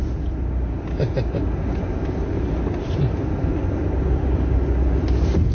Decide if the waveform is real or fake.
real